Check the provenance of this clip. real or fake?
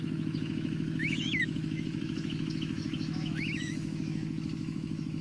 fake